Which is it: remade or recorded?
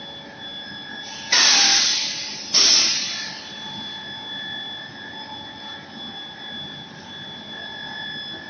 recorded